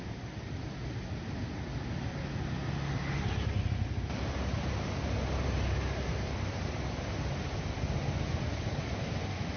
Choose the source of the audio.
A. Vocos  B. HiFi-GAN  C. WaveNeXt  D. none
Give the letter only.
D